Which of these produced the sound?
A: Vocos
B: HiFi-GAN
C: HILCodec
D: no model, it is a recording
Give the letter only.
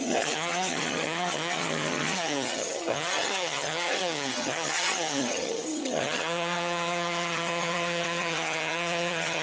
B